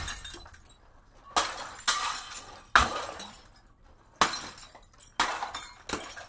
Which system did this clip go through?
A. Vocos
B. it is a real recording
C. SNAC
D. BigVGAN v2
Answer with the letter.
B